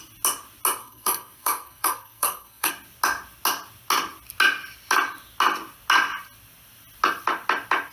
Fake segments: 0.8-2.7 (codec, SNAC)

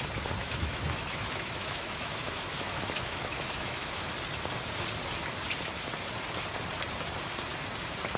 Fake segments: 0.4-4.1 (autoencoder, DAC-VAE)

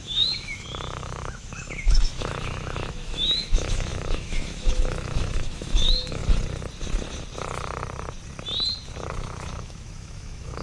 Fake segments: 0.0-6.2 (autoencoder, DAC-VAE); 9.1-10.6

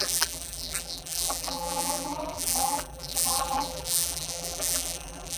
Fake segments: 0.0-5.4 (vocoder, BigVGAN v2)

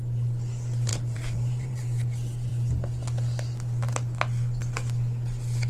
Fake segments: 0.9-1.8 (vocoder, BigVGAN v2)

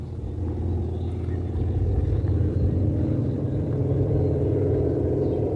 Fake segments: 2.2-5.6 (vocoder, BigVGAN v2)

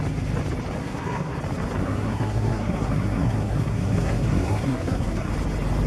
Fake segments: 0.8-1.4 (codec, SNAC); 1.8-5.3

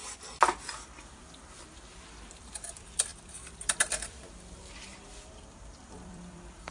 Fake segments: 0.8-6.7 (vocoder, BigVGAN v2)